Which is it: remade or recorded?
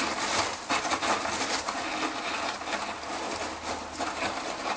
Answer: remade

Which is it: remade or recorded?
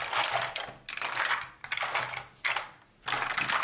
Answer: recorded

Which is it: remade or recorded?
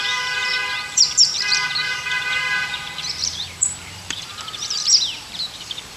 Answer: remade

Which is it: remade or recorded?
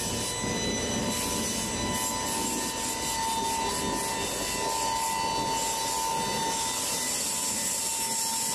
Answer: recorded